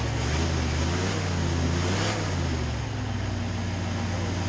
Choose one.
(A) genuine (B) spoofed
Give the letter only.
A